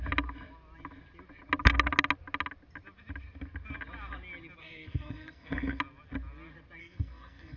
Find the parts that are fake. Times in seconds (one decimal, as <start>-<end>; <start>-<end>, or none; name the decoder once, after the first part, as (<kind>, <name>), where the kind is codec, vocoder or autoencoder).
4.6-5.8 (codec, SNAC); 6.8-7.6